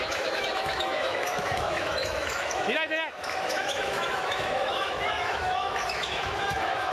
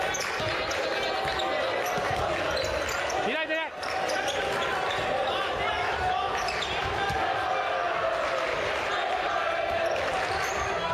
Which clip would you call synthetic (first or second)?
first